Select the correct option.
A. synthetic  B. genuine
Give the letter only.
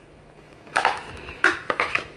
A